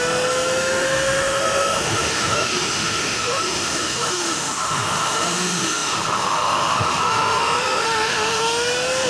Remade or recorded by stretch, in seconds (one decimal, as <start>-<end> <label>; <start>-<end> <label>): 0.0-9.1 remade